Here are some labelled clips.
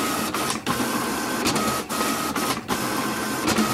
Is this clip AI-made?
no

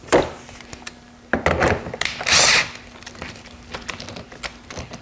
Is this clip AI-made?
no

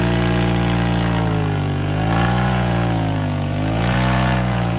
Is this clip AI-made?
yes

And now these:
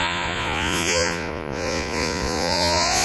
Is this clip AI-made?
yes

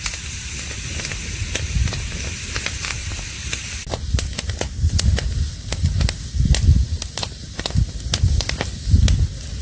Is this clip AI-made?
no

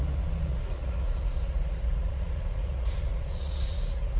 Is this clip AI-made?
yes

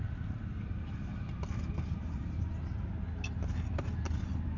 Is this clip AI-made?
no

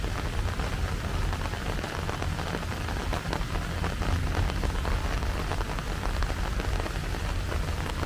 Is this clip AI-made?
no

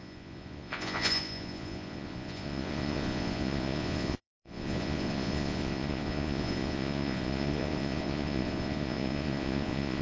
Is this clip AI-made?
yes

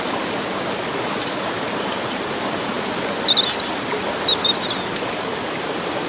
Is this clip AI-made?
no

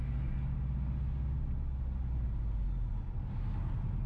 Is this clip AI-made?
no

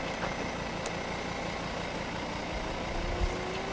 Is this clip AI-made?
no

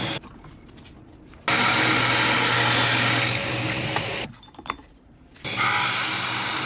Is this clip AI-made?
no